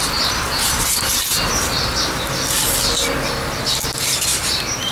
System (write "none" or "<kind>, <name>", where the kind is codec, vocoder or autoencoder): none